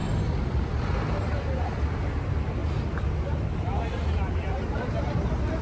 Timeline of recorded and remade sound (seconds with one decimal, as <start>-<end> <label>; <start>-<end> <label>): 0.0-5.6 recorded